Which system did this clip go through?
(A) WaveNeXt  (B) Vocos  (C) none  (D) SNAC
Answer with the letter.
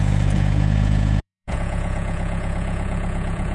B